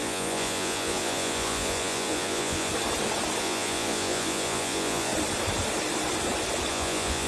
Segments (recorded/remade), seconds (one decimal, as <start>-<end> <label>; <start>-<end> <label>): 0.0-2.7 remade; 2.7-3.4 recorded; 3.4-5.1 remade; 5.1-6.7 recorded; 6.7-7.3 remade